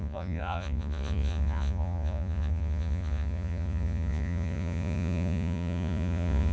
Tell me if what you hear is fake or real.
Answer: fake